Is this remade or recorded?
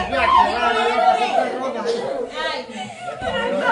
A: recorded